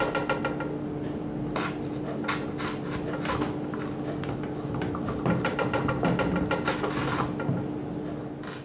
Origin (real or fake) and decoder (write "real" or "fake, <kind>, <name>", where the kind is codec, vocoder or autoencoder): real